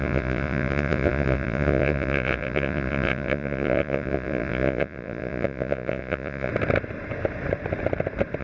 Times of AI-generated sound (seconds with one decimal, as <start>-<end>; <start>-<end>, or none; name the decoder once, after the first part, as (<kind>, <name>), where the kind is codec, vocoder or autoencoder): 0.0-6.5 (vocoder, Vocos)